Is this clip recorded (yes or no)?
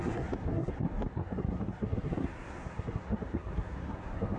no